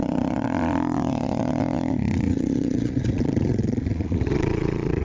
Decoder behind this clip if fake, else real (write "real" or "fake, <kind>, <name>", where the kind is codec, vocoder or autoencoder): fake, vocoder, Vocos